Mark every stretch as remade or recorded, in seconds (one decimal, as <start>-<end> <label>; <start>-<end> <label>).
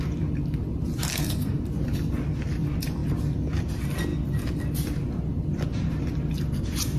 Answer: 0.0-1.1 recorded; 1.1-1.6 remade; 1.6-7.0 recorded